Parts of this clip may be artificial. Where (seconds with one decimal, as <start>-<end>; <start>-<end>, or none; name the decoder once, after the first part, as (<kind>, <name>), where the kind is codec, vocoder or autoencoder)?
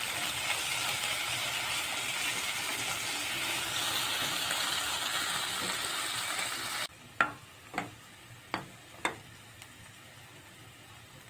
none